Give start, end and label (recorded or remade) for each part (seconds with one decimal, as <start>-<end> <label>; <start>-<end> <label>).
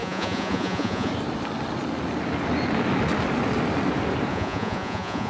0.0-1.1 remade; 1.1-4.3 recorded; 4.3-5.3 remade